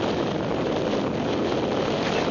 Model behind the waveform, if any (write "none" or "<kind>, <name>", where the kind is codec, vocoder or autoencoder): none